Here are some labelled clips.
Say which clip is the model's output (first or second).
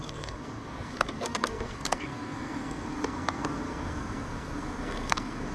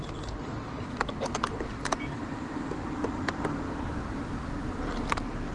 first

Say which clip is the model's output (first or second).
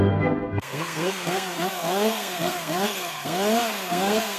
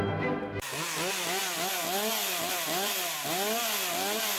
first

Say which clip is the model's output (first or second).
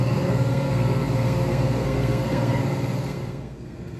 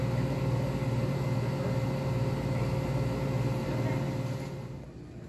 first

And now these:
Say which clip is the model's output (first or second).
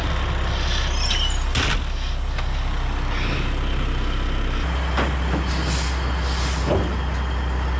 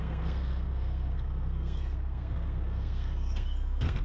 second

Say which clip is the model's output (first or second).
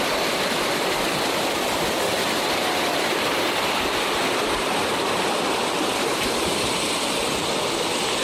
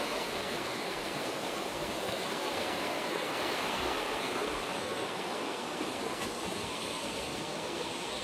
second